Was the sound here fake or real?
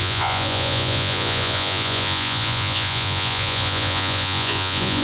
fake